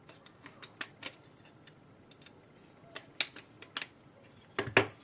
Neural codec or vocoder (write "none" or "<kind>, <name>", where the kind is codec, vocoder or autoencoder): none